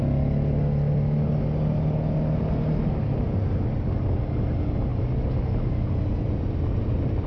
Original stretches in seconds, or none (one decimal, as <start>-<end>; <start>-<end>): 0.0-7.3